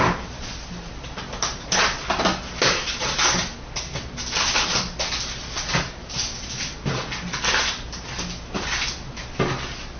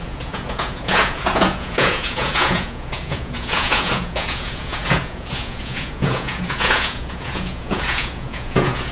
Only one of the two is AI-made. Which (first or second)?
second